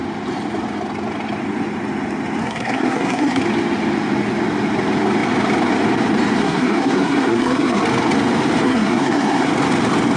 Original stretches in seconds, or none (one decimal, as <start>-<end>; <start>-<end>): 0.0-2.4; 3.4-6.4; 7.8-8.6; 9.5-10.2